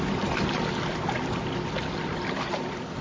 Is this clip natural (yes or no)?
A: yes